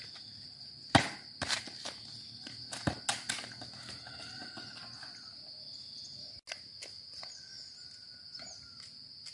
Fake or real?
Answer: real